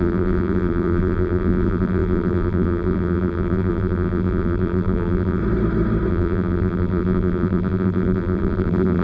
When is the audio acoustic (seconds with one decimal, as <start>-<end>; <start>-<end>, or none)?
5.4-6.1